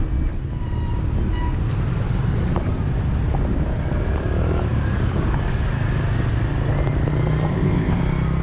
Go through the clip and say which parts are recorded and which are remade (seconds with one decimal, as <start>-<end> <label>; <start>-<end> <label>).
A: 0.0-7.5 recorded; 7.5-8.0 remade; 8.0-8.4 recorded